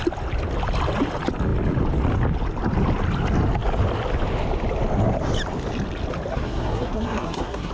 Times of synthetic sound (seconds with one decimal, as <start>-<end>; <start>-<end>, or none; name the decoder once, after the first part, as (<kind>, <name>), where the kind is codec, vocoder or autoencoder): 6.3-7.7 (codec, SNAC)